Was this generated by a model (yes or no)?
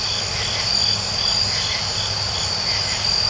no